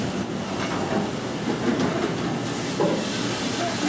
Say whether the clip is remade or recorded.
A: recorded